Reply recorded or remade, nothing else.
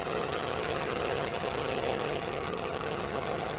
remade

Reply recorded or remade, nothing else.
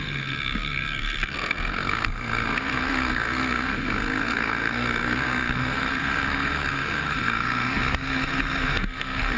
remade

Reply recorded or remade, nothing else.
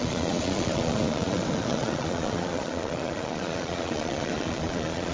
remade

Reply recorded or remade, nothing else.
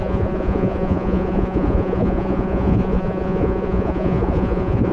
remade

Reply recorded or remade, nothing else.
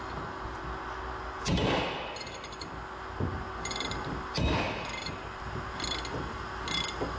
recorded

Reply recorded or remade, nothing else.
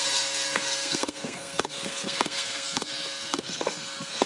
remade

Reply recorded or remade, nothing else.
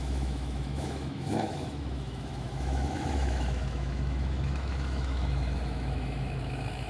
remade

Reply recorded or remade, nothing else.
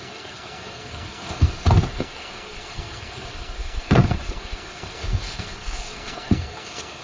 remade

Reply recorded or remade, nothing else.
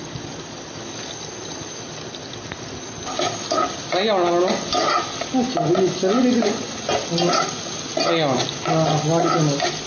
recorded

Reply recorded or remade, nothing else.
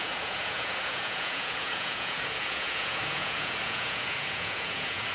remade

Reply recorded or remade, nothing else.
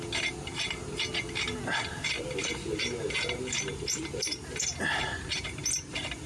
recorded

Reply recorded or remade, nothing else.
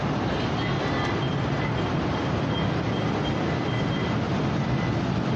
recorded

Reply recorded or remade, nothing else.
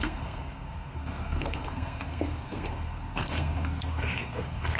remade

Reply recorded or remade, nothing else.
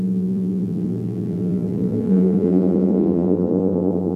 remade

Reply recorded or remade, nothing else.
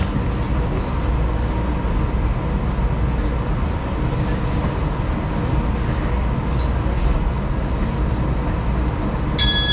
recorded